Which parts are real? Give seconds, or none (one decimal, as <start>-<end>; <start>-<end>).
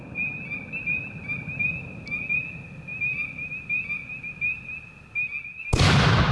0.0-6.3